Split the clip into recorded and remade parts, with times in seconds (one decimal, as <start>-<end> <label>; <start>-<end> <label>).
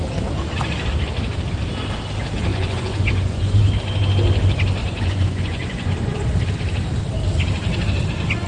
0.0-2.5 recorded; 2.5-3.6 remade; 3.6-4.8 recorded; 4.8-6.3 remade; 6.3-8.5 recorded